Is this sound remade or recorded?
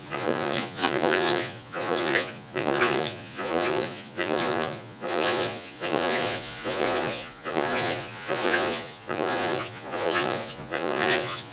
remade